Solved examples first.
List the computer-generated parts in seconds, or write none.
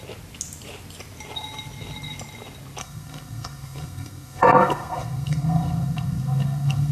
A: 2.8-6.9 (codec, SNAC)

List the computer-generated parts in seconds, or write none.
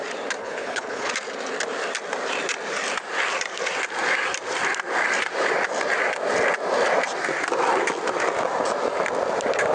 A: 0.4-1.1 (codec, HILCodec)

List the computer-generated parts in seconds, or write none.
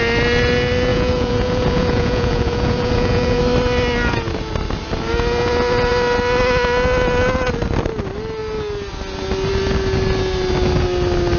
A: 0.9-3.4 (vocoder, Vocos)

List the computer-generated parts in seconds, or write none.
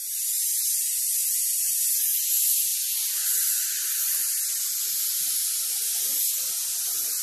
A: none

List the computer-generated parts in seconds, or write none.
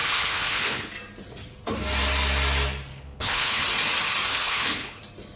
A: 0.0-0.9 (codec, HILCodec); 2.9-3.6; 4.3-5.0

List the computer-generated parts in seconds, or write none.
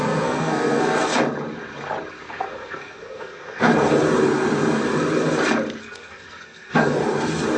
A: 0.0-1.1 (codec, SNAC); 2.1-3.7; 5.8-7.0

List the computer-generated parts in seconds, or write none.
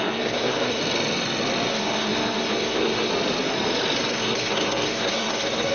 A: 0.0-0.8 (codec, SNAC); 1.7-3.1; 4.0-5.7